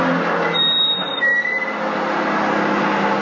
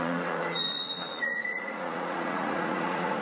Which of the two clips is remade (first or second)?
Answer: second